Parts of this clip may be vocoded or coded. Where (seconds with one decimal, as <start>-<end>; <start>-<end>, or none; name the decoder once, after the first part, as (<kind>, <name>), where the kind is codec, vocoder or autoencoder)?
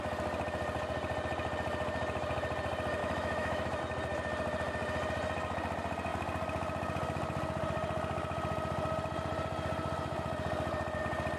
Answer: 3.0-3.8 (autoencoder, DAC-VAE)